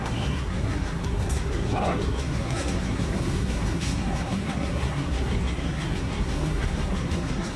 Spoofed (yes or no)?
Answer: yes